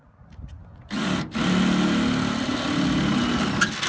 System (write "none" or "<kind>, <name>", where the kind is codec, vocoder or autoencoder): none